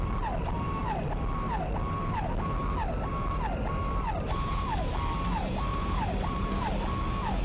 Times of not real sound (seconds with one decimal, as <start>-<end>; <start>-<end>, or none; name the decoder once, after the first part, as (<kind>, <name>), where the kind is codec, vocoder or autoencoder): 5.7-6.7 (vocoder, BigVGAN v2)